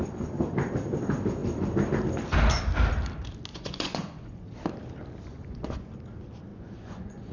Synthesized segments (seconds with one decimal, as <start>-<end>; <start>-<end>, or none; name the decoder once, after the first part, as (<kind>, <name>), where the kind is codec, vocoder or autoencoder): 3.5-4.5 (vocoder, Vocos); 5.3-5.9; 6.5-7.3